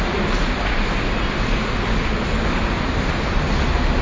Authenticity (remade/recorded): recorded